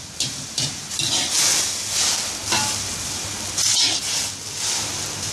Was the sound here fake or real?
real